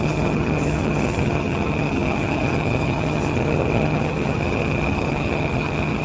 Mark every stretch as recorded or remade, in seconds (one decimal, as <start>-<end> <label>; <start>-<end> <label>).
0.0-6.0 remade